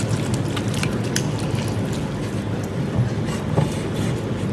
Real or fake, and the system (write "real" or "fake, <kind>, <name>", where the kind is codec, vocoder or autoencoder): real